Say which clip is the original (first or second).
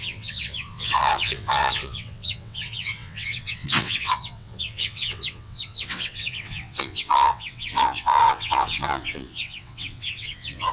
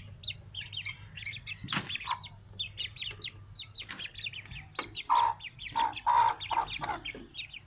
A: second